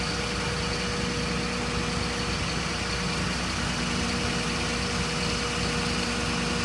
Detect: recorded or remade recorded